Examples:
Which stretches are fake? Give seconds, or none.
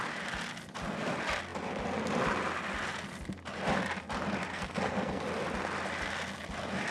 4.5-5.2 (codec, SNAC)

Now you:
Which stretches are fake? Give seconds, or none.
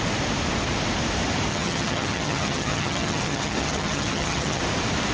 1.5-4.6 (vocoder, HiFi-GAN)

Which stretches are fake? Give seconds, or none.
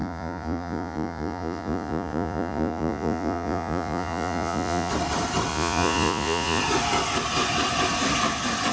0.0-4.9 (vocoder, Vocos); 5.5-6.6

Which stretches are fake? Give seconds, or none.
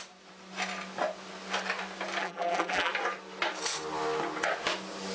2.2-2.9 (vocoder, BigVGAN v2)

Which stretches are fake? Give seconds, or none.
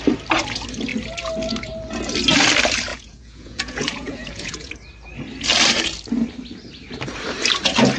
2.9-4.7 (vocoder, Vocos)